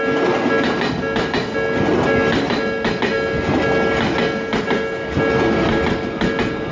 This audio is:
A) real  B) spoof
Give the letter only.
A